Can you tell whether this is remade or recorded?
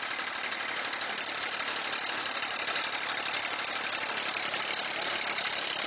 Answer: recorded